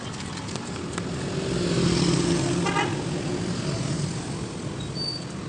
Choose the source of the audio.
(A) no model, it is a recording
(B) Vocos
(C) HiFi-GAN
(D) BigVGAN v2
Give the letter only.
A